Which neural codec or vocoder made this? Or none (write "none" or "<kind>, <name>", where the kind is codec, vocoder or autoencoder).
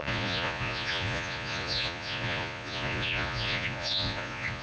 vocoder, Vocos